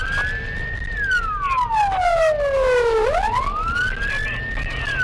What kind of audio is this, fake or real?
real